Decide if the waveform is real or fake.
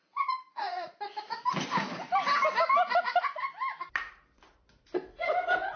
real